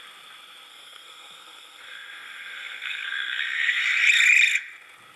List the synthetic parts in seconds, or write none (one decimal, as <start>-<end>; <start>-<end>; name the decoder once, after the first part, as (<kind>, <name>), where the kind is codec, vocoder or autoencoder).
0.7-3.8 (codec, SNAC)